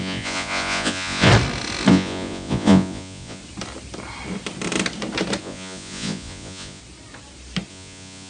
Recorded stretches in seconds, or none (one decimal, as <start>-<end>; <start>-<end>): 1.3-1.9; 3.4-5.4; 6.8-7.7